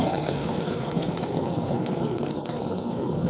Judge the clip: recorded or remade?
remade